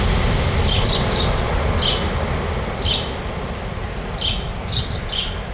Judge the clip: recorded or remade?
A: recorded